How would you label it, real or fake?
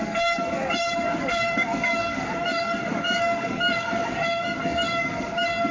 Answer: fake